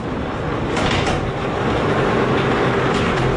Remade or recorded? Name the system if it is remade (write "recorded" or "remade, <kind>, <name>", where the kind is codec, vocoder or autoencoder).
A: recorded